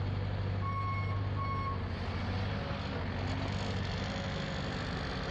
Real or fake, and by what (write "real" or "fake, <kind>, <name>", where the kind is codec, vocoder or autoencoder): real